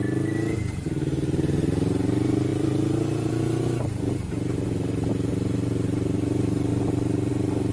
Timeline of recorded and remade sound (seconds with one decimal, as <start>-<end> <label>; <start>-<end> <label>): 0.0-2.5 recorded; 2.5-3.3 remade; 3.3-7.7 recorded